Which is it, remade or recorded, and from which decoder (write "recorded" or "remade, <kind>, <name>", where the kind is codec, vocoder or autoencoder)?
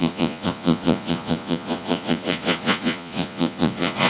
remade, vocoder, Vocos